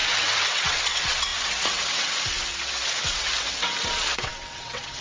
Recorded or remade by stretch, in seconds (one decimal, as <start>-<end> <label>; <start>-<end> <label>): 0.0-5.0 remade